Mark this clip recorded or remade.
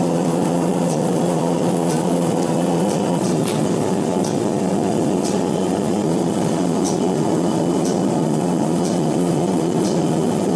remade